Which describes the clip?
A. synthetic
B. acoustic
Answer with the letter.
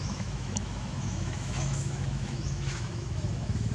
A